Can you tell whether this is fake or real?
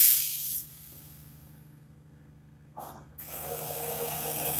fake